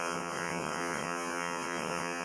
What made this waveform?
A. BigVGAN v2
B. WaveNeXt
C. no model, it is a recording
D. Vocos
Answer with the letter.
B